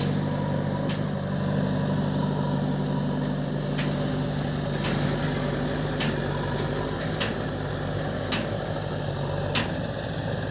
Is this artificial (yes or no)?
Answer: no